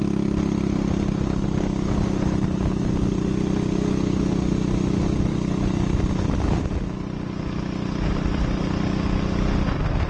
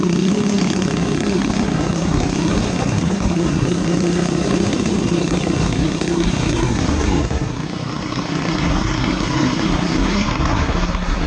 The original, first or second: first